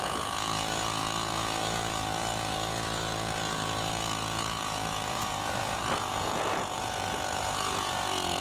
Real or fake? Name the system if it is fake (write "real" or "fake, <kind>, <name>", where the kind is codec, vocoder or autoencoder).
fake, vocoder, Vocos